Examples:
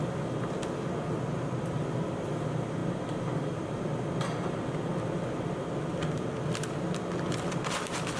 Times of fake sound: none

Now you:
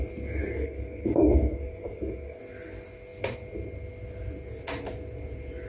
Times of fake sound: 0.4-2.4 (codec, DAC)

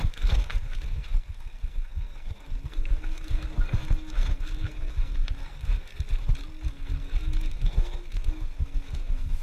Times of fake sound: 0.0-5.9 (codec, SNAC); 6.7-9.4